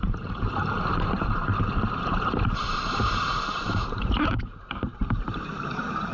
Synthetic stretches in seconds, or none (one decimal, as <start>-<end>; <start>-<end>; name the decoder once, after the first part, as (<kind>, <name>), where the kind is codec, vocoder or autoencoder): 0.0-1.5 (vocoder, BigVGAN v2); 2.0-6.1